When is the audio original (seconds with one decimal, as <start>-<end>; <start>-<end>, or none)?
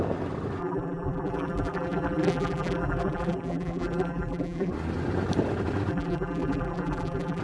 0.0-0.6; 4.7-5.9